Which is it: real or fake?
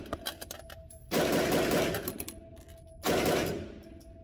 real